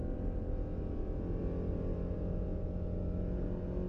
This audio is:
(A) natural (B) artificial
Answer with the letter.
A